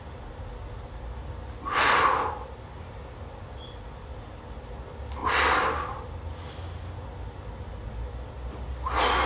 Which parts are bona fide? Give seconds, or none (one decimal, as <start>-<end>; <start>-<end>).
0.0-9.3